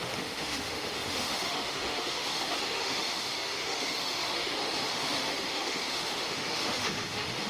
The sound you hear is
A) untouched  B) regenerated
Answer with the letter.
B